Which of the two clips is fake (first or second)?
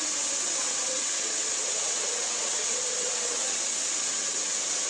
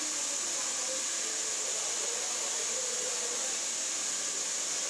first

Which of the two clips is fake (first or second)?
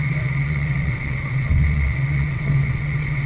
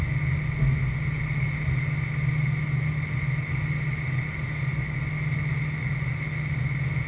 first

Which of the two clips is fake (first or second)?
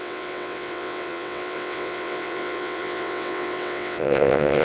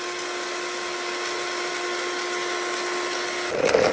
first